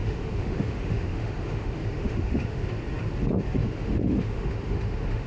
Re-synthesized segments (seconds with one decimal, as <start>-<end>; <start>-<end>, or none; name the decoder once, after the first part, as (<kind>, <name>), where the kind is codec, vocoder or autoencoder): 0.0-2.7 (autoencoder, DAC-VAE); 3.6-5.3